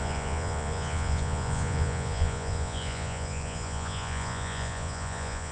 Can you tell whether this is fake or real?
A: fake